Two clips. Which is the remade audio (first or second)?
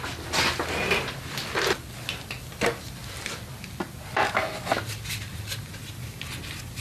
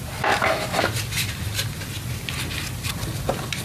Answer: second